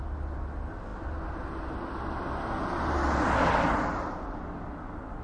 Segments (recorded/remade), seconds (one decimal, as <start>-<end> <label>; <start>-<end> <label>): 0.0-5.2 recorded